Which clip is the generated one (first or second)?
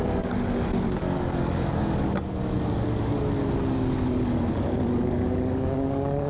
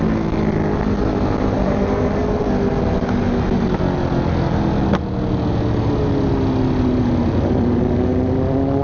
first